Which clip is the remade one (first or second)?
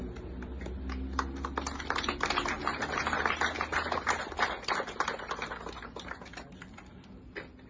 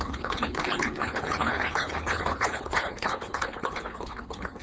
second